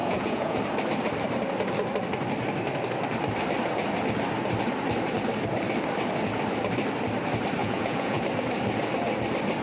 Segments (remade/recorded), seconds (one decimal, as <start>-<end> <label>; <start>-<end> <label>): 0.0-0.6 remade; 0.6-7.6 recorded; 7.6-8.2 remade; 8.2-9.6 recorded